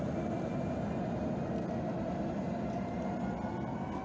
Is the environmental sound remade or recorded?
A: recorded